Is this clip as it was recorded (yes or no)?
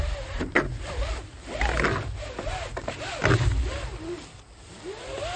yes